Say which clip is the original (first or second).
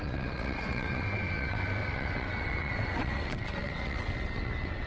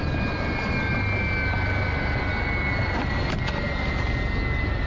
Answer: second